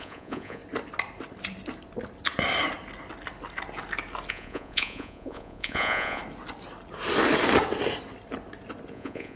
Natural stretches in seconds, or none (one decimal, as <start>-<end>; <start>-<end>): 0.6-4.3; 6.2-8.9